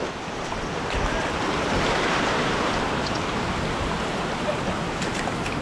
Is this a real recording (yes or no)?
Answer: yes